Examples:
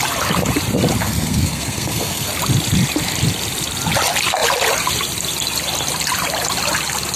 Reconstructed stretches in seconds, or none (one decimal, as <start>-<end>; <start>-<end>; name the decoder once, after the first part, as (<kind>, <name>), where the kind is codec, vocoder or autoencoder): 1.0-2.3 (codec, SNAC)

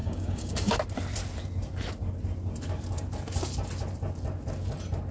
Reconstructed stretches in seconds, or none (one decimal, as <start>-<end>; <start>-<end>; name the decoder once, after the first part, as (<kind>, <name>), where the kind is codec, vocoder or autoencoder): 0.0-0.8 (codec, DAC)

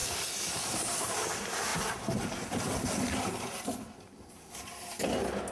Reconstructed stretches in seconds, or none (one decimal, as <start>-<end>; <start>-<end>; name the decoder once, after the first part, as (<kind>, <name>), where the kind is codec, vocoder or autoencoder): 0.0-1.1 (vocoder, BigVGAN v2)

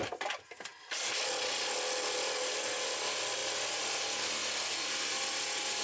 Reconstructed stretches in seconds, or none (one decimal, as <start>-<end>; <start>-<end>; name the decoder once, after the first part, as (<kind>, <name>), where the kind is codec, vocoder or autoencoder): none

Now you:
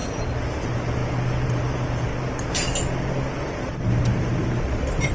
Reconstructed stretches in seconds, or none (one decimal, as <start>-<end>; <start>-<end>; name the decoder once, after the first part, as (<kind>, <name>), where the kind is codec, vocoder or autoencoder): 0.0-1.0 (vocoder, BigVGAN v2); 1.5-2.1; 3.3-5.1